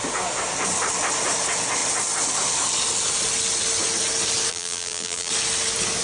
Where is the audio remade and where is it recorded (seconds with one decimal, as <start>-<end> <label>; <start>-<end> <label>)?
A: 0.0-4.5 recorded; 4.5-5.3 remade; 5.3-6.0 recorded